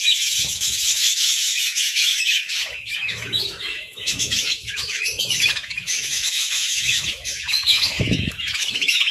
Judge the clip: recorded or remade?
remade